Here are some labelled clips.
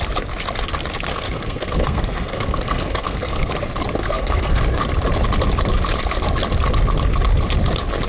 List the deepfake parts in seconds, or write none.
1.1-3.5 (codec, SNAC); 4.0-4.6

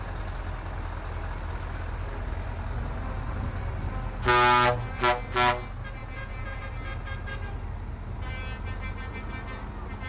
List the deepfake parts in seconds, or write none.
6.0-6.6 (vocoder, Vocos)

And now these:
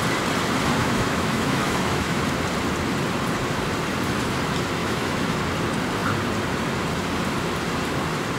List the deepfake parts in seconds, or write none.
0.8-2.2 (autoencoder, DAC-VAE); 4.8-5.4

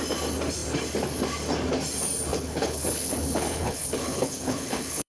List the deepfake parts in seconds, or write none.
2.3-5.1 (codec, HILCodec)

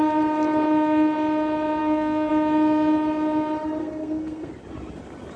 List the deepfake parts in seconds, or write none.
1.8-2.3 (codec, SNAC); 3.8-4.5

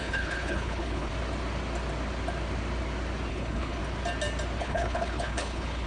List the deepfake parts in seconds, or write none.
0.0-1.1 (codec, HILCodec); 3.3-3.8; 4.6-5.9

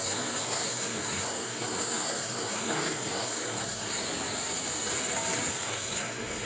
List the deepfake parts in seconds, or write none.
0.0-4.0 (codec, SNAC); 5.5-6.5

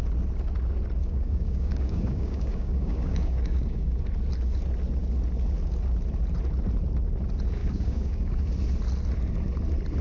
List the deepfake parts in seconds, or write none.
1.0-4.0 (codec, DAC); 7.6-8.4